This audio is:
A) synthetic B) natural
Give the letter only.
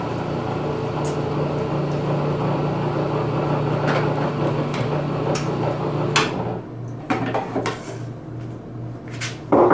B